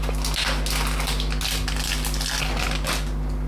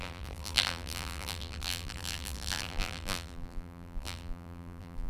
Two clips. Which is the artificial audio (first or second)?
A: second